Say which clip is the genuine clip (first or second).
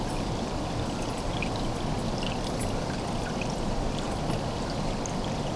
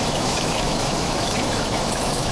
first